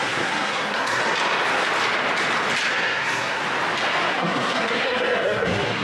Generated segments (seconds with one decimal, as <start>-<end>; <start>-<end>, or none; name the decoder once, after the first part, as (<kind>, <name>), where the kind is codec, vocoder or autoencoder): 0.0-1.0 (codec, SNAC); 2.7-3.4; 4.1-5.8